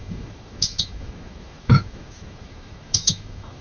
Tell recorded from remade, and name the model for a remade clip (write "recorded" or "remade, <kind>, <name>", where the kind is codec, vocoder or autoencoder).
remade, autoencoder, DAC-VAE